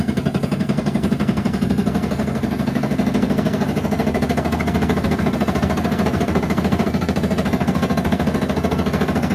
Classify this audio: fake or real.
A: fake